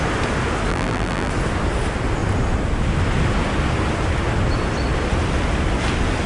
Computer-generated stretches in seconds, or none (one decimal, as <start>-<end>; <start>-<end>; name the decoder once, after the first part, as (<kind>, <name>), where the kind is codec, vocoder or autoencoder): 0.7-1.3 (vocoder, BigVGAN v2)

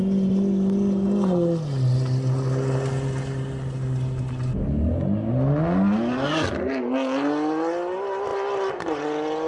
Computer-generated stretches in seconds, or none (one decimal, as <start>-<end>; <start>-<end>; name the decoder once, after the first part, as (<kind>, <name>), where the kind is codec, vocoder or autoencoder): none

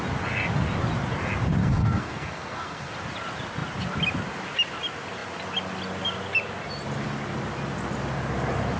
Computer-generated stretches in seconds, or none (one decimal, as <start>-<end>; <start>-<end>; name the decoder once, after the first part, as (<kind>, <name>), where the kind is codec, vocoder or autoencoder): 1.6-2.9 (codec, SNAC)

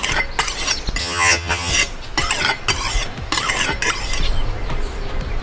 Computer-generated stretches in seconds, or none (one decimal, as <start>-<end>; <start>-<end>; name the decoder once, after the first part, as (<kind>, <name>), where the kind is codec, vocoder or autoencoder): 1.0-1.7 (vocoder, HiFi-GAN)

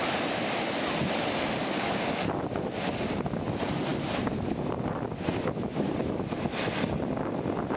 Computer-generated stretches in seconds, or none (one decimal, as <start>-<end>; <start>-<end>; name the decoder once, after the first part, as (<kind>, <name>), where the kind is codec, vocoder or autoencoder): none

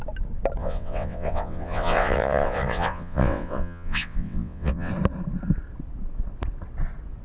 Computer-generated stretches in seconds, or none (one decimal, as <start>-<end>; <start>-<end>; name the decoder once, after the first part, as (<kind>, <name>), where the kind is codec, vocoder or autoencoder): 0.6-4.9 (vocoder, WaveNeXt)

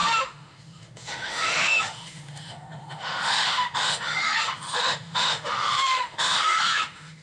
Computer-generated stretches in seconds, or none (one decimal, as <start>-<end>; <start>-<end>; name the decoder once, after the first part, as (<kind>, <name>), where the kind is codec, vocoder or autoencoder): 0.0-7.2 (autoencoder, DAC-VAE)

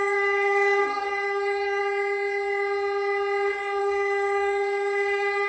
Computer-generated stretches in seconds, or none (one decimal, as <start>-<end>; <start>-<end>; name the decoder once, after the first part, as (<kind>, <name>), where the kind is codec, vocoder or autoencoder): 0.0-1.8 (codec, DAC); 3.8-5.5